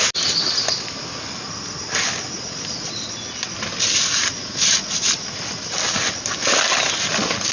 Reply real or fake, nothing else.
real